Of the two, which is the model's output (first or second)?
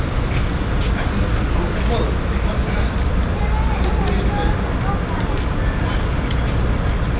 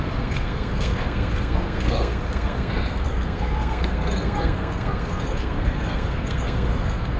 second